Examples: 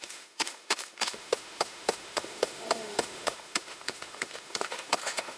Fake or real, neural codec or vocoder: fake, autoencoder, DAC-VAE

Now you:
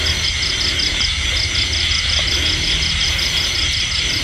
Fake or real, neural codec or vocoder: real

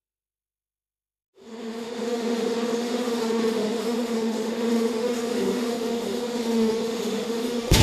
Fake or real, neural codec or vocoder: fake, autoencoder, DAC-VAE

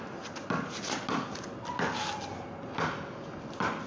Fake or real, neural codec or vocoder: real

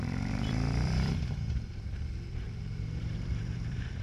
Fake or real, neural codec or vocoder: fake, vocoder, BigVGAN v2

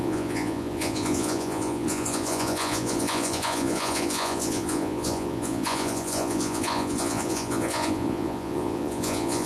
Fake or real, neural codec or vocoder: fake, vocoder, Vocos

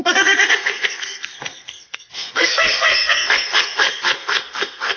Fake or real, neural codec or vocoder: fake, codec, SNAC